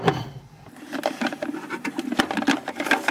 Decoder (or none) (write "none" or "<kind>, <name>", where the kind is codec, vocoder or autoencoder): none